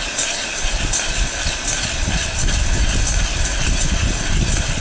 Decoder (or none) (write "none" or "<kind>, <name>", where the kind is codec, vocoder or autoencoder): none